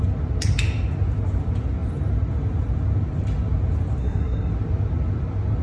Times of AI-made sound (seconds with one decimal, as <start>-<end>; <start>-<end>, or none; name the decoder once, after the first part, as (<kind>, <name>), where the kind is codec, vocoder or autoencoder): 4.0-4.5 (codec, SNAC)